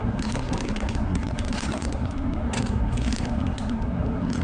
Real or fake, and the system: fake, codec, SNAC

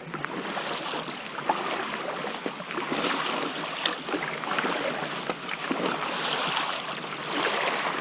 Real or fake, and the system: real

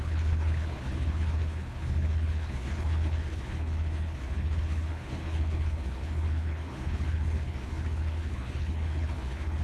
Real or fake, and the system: fake, codec, HILCodec